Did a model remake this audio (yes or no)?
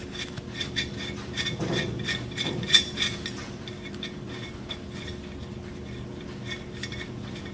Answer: yes